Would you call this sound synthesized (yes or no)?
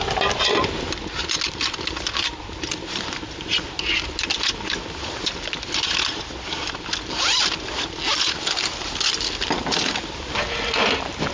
no